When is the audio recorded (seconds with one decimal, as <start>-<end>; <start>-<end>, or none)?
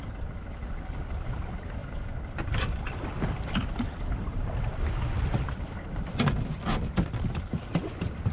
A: none